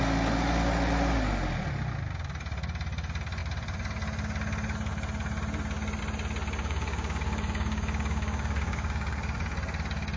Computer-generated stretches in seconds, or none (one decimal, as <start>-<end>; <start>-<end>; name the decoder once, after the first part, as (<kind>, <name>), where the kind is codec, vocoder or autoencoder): 6.6-9.2 (codec, DAC)